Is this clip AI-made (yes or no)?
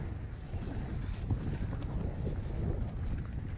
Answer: no